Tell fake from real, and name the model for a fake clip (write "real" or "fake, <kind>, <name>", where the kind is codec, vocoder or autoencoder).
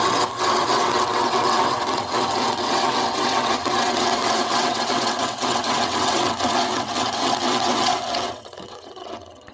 fake, vocoder, WaveNeXt